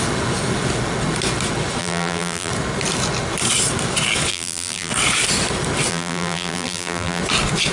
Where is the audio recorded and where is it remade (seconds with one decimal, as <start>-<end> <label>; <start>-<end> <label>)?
0.0-1.8 recorded; 1.8-2.5 remade; 2.5-4.3 recorded; 4.3-4.9 remade; 4.9-5.9 recorded; 5.9-7.2 remade; 7.2-7.7 recorded

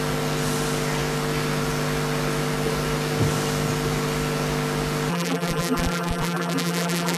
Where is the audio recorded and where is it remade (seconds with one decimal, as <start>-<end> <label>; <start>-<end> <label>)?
0.0-5.1 recorded; 5.1-7.2 remade

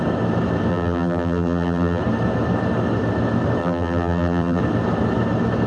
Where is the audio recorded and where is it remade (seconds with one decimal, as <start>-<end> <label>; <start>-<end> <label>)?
0.0-0.7 recorded; 0.7-2.0 remade; 2.0-3.6 recorded; 3.6-4.6 remade; 4.6-5.7 recorded

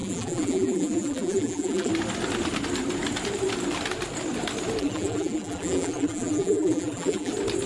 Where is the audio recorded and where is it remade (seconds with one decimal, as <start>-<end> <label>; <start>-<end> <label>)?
0.0-1.9 remade; 1.9-4.8 recorded; 4.8-7.3 remade; 7.3-7.7 recorded

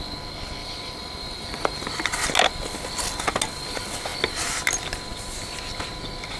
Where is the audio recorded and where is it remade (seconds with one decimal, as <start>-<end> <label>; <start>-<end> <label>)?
0.0-0.6 recorded; 0.6-1.9 remade; 1.9-6.4 recorded

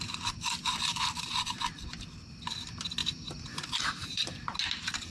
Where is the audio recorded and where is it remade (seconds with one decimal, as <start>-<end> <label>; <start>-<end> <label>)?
0.0-0.9 recorded; 0.9-1.7 remade; 1.7-3.0 recorded; 3.0-4.6 remade; 4.6-5.1 recorded

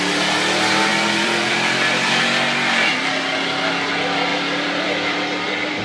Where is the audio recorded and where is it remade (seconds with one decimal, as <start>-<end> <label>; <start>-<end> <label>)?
0.0-0.9 recorded; 0.9-2.2 remade; 2.2-4.3 recorded; 4.3-5.8 remade